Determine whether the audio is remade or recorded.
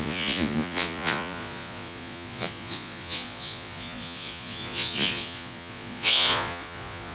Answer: remade